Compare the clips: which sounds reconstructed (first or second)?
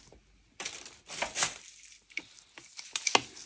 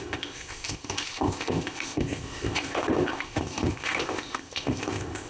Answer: second